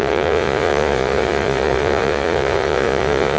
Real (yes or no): no